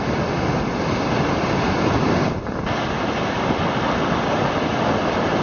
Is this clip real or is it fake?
real